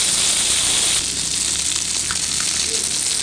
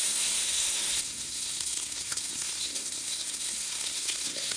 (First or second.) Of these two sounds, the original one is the first